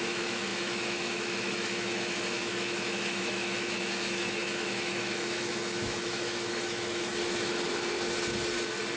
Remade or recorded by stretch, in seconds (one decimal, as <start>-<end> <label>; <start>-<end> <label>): 0.0-7.1 remade; 7.1-9.0 recorded